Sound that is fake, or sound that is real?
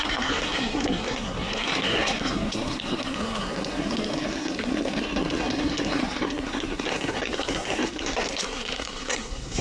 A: fake